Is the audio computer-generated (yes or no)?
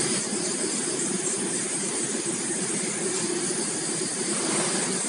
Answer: yes